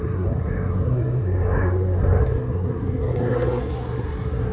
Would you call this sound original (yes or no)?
no